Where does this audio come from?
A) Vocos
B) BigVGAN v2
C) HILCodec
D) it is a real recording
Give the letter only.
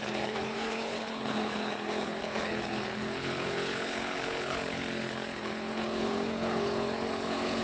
C